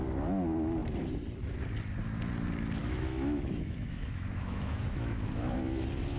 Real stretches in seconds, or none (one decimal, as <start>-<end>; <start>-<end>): 0.0-2.8; 5.6-6.2